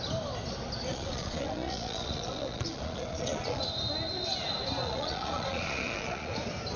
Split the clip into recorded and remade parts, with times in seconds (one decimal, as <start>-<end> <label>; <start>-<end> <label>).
0.0-0.9 recorded; 0.9-3.6 remade; 3.6-4.8 recorded; 4.8-6.3 remade; 6.3-6.8 recorded

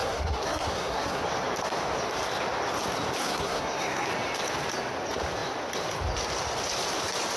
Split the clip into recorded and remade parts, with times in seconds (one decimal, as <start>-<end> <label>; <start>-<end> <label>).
0.0-1.2 remade; 1.2-3.2 recorded; 3.2-4.1 remade; 4.1-7.4 recorded